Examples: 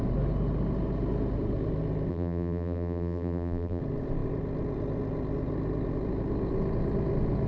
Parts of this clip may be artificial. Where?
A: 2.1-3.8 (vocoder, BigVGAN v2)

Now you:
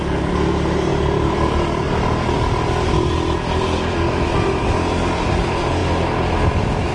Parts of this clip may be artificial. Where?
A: 0.9-4.9 (vocoder, BigVGAN v2)

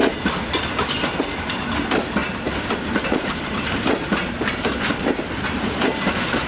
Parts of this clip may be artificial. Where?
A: 1.2-6.5 (vocoder, BigVGAN v2)